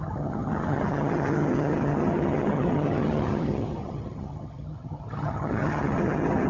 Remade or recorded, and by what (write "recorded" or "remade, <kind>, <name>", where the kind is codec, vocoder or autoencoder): remade, vocoder, HiFi-GAN